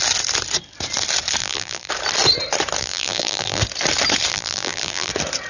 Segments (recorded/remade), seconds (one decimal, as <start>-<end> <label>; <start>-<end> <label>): 0.0-1.4 recorded; 1.4-1.9 remade; 1.9-2.8 recorded; 2.8-3.6 remade; 3.6-4.3 recorded; 4.3-5.1 remade; 5.1-5.5 recorded